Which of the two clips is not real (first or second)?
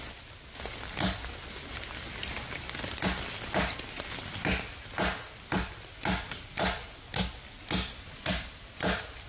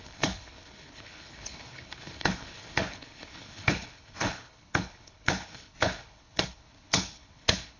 second